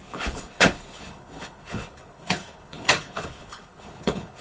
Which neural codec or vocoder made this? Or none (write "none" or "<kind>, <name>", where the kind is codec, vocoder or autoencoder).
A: codec, HILCodec